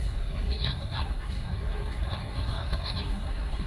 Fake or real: fake